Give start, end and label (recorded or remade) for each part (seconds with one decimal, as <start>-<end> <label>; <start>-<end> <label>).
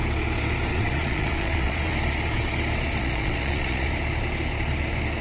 0.0-0.7 recorded; 0.7-1.9 remade; 1.9-3.0 recorded; 3.0-3.9 remade; 3.9-5.2 recorded